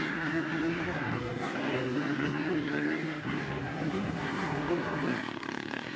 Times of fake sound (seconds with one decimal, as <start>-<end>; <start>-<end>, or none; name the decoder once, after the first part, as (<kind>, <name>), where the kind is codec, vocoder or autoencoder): 0.0-6.0 (codec, SNAC)